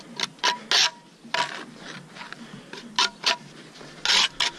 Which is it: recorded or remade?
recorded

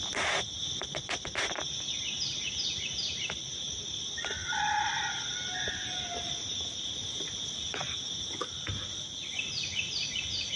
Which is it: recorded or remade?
recorded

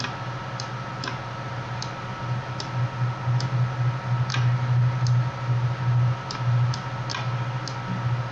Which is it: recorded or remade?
recorded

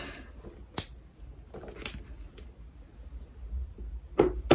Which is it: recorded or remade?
recorded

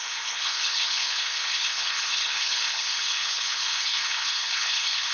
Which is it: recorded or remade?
remade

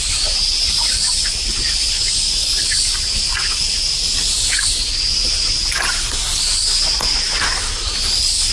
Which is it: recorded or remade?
recorded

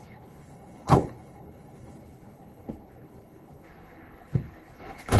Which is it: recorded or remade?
remade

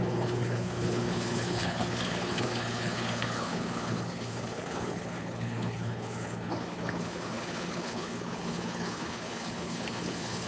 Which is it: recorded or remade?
remade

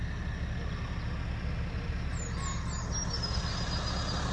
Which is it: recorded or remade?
recorded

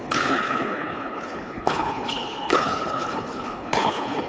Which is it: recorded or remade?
remade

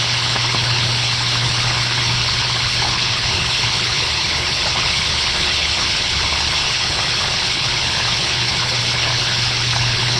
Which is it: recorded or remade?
remade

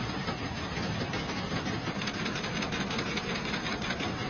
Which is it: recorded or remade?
recorded